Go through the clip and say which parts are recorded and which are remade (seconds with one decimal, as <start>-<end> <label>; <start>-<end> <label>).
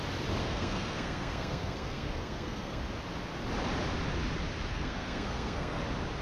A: 0.0-0.4 recorded; 0.4-2.8 remade; 2.8-4.7 recorded; 4.7-5.8 remade; 5.8-6.2 recorded